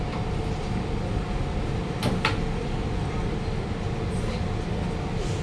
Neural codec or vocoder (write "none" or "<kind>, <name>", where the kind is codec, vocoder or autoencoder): none